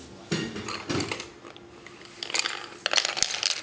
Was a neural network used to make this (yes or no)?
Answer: no